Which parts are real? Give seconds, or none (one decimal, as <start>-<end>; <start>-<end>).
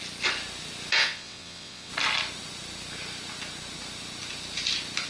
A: 0.0-1.0; 1.9-5.1